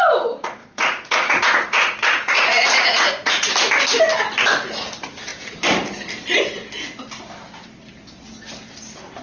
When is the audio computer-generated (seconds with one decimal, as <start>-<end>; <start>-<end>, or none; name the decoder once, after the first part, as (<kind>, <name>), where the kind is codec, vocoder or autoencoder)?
0.6-3.5 (vocoder, Vocos)

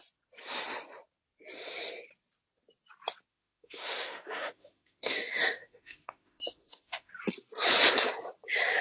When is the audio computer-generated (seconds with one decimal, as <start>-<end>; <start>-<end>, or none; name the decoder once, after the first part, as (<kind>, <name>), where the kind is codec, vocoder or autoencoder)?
3.3-7.1 (autoencoder, DAC-VAE)